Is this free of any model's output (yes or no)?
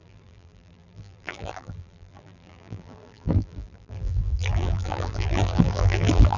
no